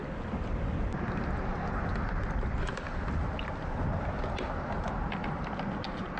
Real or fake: real